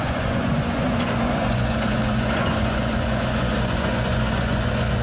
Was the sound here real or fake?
fake